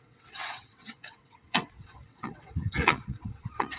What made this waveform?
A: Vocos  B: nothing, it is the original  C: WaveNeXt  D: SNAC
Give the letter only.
C